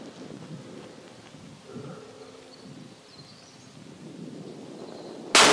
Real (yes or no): yes